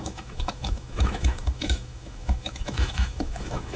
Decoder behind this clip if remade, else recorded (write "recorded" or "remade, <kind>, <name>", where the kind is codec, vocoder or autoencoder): remade, autoencoder, DAC-VAE